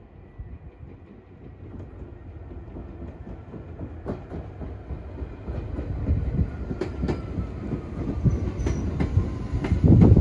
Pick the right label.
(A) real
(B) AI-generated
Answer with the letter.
A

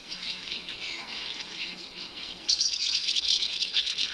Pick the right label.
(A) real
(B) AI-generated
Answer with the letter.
B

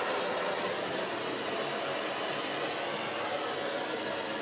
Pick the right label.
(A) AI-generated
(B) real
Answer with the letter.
B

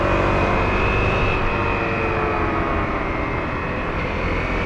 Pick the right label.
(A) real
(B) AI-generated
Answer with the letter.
A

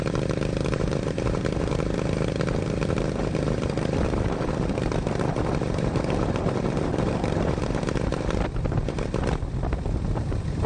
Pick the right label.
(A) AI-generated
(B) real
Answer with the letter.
A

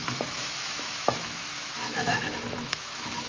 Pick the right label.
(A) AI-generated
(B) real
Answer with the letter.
A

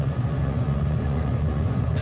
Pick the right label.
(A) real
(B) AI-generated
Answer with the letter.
B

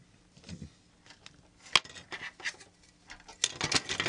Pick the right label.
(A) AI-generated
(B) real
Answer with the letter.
B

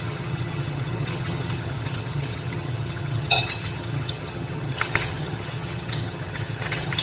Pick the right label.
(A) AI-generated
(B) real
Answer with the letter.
A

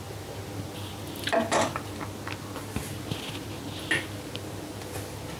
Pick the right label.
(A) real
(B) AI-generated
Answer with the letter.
A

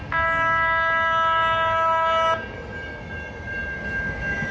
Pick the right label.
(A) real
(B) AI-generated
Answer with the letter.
A